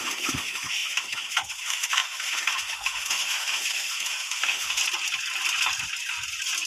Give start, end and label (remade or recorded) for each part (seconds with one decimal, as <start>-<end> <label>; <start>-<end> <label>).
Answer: 0.0-4.8 remade; 4.8-6.7 recorded

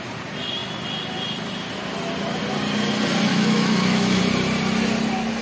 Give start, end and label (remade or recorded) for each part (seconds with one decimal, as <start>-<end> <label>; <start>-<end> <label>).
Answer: 0.0-3.3 recorded; 3.3-4.2 remade; 4.2-5.4 recorded

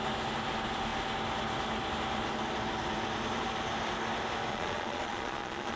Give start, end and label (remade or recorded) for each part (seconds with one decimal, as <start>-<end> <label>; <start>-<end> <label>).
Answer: 0.0-4.5 recorded; 4.5-5.8 remade

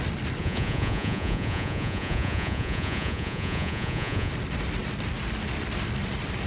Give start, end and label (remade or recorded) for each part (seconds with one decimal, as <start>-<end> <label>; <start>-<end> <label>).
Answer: 0.0-0.4 recorded; 0.4-4.3 remade; 4.3-6.5 recorded

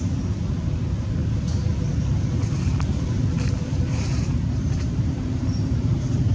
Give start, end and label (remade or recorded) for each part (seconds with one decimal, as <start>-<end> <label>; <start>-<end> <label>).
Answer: 0.0-2.5 recorded; 2.5-6.3 remade

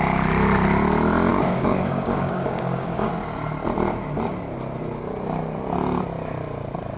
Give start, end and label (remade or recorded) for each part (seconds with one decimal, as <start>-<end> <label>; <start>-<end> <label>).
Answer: 0.0-1.3 recorded; 1.3-3.1 remade; 3.1-7.0 recorded

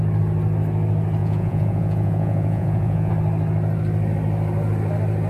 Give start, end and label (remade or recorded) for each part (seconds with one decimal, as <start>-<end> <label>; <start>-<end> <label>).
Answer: 0.0-1.2 recorded; 1.2-3.1 remade; 3.1-5.3 recorded

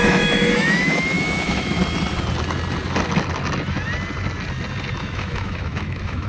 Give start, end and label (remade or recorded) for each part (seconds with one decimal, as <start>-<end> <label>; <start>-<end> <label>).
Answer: 0.0-1.8 remade; 1.8-5.0 recorded; 5.0-6.3 remade